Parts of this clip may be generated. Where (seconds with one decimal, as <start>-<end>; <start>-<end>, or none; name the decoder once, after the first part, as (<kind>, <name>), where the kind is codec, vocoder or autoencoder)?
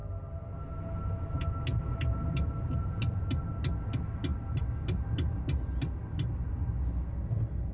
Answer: none